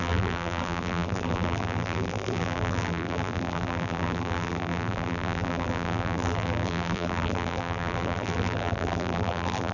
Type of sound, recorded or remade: remade